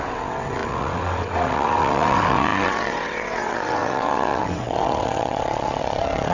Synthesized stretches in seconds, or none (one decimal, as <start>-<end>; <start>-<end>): 0.0-6.3